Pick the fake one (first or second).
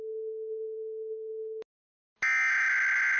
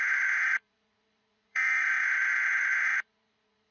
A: second